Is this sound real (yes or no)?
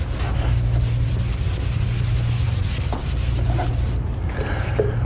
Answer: yes